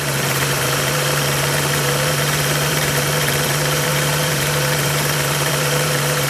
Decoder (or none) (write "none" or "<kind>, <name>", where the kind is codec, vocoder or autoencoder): vocoder, BigVGAN v2